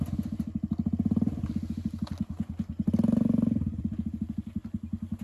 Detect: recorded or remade recorded